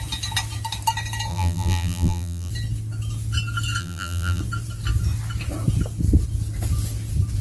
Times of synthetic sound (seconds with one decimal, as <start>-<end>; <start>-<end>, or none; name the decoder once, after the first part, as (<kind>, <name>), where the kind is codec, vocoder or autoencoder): 1.3-2.5 (vocoder, BigVGAN v2); 3.8-4.4